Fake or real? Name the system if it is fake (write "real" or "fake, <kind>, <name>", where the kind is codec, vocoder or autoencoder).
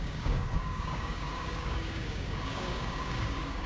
fake, codec, DAC